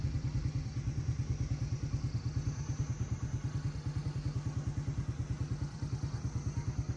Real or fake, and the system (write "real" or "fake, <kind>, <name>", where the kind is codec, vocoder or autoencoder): real